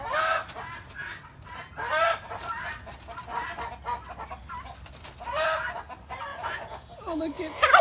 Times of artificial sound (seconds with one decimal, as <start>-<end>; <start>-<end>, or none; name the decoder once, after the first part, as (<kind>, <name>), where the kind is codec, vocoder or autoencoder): 6.3-7.2 (vocoder, Vocos)